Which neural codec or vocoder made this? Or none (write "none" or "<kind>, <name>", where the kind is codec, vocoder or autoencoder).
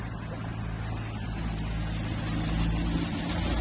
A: none